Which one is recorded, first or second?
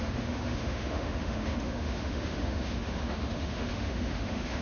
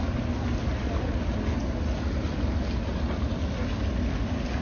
second